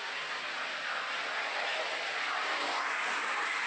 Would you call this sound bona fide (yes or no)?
yes